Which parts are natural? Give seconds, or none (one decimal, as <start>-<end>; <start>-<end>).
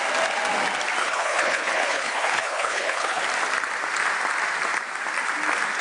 0.0-1.0; 3.2-5.8